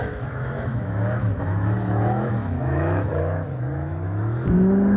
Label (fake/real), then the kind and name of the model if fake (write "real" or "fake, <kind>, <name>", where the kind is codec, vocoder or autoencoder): fake, autoencoder, DAC-VAE